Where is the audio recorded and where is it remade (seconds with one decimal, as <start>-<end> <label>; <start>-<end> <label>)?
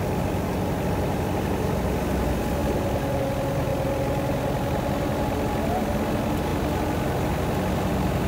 0.0-8.3 recorded